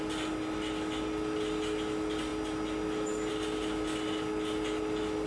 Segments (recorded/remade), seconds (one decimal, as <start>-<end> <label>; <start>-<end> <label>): 0.0-5.3 recorded